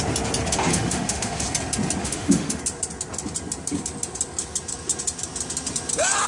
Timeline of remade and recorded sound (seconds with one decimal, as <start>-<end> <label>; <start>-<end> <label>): 0.0-0.7 recorded; 0.7-1.4 remade; 1.4-2.0 recorded; 2.0-2.6 remade; 2.6-6.3 recorded